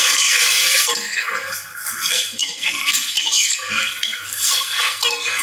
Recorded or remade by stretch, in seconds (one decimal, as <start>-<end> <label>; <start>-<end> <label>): 0.0-5.4 remade